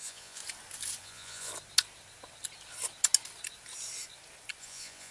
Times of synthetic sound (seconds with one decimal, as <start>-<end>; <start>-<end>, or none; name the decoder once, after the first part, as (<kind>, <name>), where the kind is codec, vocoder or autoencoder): 0.0-0.4 (vocoder, Vocos); 1.0-1.5; 4.6-5.1